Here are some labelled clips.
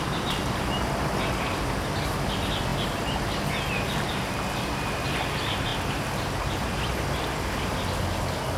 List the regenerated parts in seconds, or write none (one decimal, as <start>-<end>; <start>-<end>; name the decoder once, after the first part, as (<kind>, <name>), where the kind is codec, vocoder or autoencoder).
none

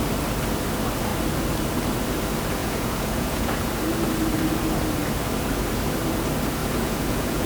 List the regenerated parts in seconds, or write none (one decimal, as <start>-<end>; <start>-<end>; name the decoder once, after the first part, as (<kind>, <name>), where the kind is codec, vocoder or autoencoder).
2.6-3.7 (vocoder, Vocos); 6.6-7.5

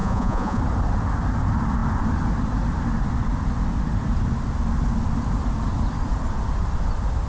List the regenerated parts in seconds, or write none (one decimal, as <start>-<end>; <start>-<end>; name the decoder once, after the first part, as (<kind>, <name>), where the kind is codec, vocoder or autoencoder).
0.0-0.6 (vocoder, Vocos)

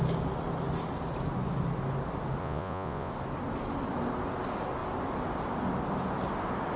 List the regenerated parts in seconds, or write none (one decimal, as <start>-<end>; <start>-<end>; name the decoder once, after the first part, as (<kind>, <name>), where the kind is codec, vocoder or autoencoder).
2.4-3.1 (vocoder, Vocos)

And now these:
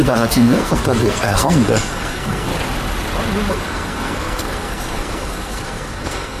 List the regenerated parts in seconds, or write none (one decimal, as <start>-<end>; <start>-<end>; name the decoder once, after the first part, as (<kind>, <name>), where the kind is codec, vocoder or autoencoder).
0.0-2.5 (codec, SNAC); 3.5-6.4

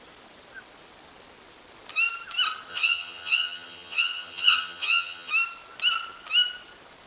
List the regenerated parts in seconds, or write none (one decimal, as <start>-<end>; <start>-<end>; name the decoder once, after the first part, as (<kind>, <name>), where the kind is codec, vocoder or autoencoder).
2.7-5.3 (vocoder, HiFi-GAN)

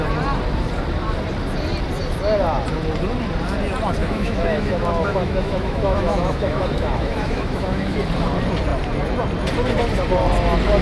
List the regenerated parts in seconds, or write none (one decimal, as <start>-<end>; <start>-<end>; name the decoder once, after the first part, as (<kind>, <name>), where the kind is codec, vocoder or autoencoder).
4.0-8.0 (autoencoder, DAC-VAE)

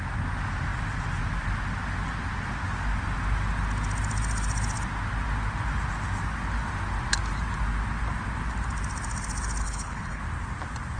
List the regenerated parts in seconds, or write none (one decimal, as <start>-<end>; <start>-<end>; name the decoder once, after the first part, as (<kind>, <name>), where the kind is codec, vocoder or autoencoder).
9.6-10.2 (codec, HILCodec)